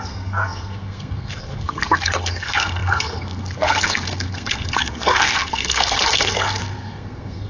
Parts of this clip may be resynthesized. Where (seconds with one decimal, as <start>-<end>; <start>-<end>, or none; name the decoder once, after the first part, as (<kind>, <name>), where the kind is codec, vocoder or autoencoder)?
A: 0.0-7.5 (codec, SNAC)